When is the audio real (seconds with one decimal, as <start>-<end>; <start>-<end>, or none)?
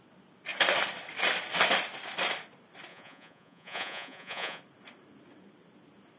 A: 0.0-2.9; 4.6-6.2